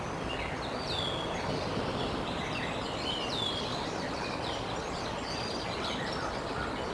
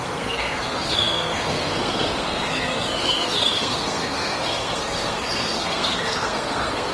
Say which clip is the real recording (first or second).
first